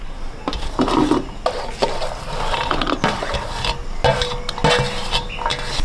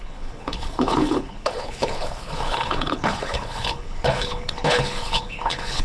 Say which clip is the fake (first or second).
second